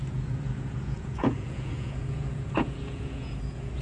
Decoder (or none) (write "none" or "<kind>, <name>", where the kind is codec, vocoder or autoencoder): vocoder, Vocos